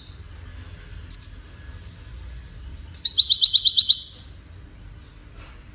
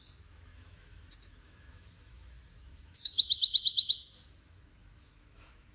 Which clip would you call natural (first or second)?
first